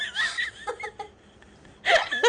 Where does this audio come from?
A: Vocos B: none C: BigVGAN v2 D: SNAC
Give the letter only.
B